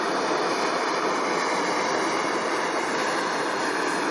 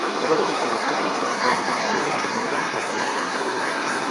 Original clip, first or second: first